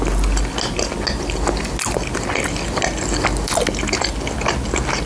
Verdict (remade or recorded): recorded